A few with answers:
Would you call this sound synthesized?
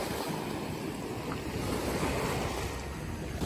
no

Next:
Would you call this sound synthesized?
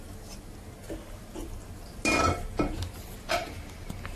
no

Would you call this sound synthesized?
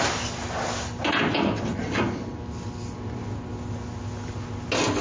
no